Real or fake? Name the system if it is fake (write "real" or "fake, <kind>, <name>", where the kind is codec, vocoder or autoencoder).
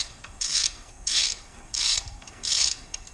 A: fake, codec, SNAC